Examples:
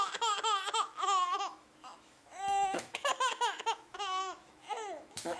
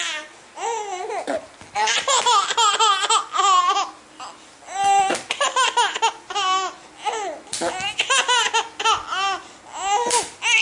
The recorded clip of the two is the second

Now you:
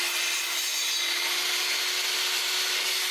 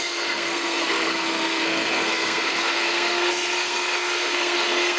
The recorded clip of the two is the first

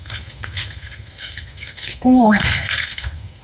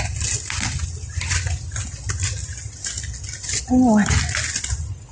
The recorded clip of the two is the second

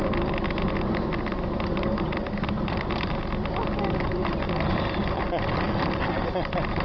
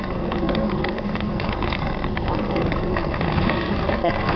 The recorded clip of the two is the first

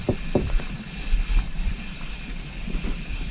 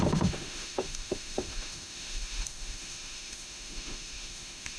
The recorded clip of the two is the first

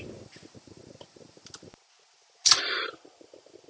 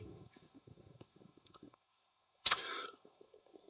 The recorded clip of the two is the first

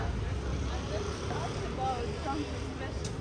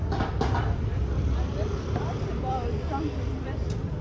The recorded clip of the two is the first